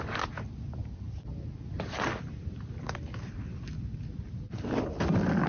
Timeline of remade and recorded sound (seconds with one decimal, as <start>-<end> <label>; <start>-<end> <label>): 0.0-5.5 recorded